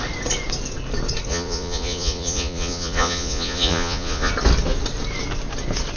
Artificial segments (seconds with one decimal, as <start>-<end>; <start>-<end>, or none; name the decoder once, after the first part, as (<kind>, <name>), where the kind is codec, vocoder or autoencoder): 1.3-4.3 (vocoder, Vocos)

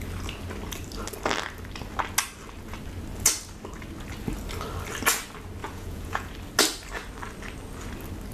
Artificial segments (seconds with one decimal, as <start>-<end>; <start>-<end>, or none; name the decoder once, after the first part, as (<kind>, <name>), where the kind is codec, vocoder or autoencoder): 5.6-6.3 (vocoder, Vocos)

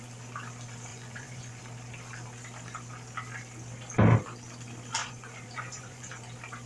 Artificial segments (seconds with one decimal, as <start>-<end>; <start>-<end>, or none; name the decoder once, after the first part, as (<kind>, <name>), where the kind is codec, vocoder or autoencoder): 0.9-1.6 (vocoder, Vocos); 5.0-6.1

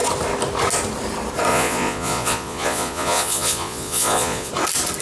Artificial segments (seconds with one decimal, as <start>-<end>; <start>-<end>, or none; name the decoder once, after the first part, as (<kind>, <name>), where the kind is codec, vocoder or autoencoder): 1.5-4.5 (vocoder, Vocos)

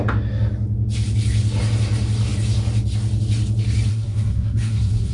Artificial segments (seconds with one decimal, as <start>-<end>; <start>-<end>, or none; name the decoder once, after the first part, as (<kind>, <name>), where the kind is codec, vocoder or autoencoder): 3.9-5.1 (codec, SNAC)

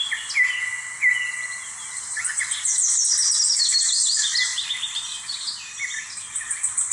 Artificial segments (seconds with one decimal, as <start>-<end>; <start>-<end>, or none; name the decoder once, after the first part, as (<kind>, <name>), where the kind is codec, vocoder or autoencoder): 4.5-6.0 (vocoder, BigVGAN v2)

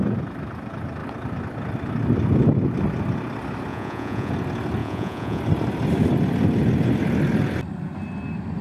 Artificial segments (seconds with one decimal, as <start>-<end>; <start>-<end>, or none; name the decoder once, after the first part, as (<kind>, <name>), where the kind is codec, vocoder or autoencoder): 3.7-4.3 (vocoder, Vocos); 4.8-5.4